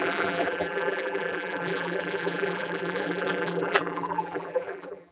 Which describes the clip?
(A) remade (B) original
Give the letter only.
A